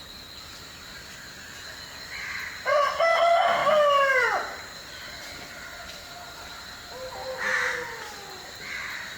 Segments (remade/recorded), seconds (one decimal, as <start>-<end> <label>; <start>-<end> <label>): 0.0-6.5 recorded; 6.5-7.1 remade; 7.1-9.2 recorded